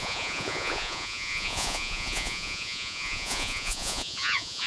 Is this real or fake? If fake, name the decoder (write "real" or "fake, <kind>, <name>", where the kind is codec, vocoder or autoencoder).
fake, vocoder, Vocos